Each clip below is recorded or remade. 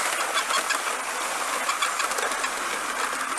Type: recorded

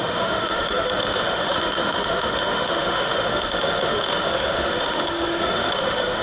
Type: remade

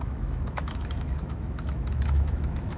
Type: remade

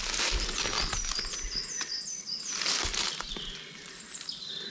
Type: recorded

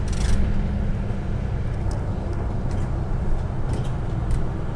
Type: recorded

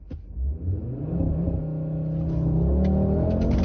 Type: recorded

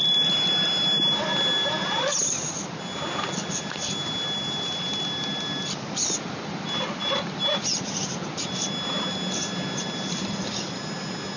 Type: recorded